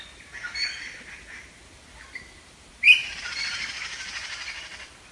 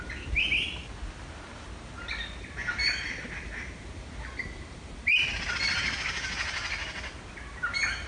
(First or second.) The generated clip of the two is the first